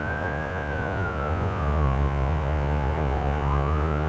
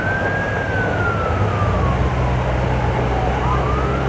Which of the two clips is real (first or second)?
second